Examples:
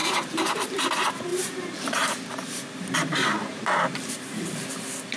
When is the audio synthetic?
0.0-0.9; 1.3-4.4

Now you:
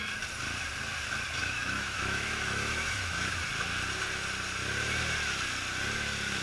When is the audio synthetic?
1.4-3.3

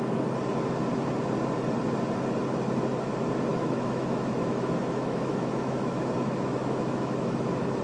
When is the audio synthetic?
3.5-7.8

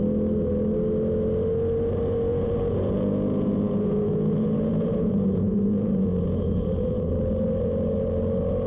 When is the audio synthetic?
2.3-7.1

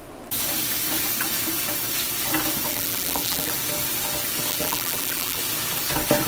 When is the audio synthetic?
2.7-3.5; 4.5-5.4